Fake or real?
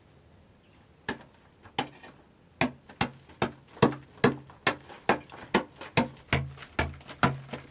real